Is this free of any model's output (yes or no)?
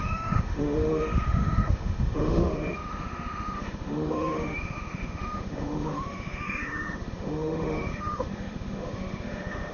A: no